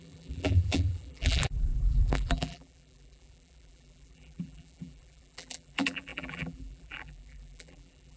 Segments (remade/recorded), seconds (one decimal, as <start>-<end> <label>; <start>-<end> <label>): 0.0-8.2 remade

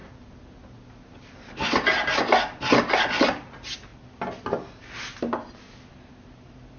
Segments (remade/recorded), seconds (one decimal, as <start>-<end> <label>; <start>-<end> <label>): 0.0-6.8 recorded

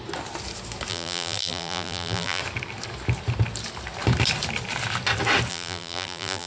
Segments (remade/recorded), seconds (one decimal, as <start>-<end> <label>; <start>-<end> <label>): 0.0-0.9 recorded; 0.9-2.4 remade; 2.4-5.5 recorded; 5.5-6.5 remade

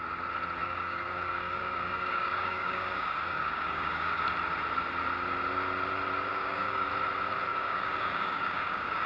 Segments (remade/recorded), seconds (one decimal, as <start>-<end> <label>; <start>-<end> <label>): 0.0-0.6 recorded; 0.6-4.2 remade; 4.2-6.3 recorded; 6.3-6.9 remade; 6.9-7.5 recorded; 7.5-9.1 remade

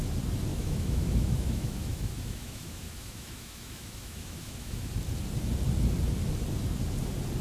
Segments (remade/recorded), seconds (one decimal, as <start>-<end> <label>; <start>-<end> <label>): 0.0-0.5 recorded; 0.5-4.9 remade; 4.9-7.4 recorded

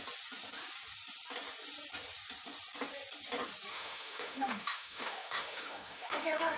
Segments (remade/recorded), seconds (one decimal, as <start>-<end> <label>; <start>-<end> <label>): 0.0-3.7 recorded; 3.7-6.6 remade

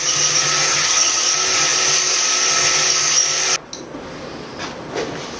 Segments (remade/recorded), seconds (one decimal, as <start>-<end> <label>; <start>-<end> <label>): 0.0-0.7 recorded; 0.7-1.2 remade; 1.2-5.4 recorded